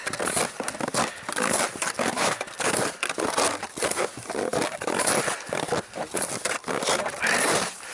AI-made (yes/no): no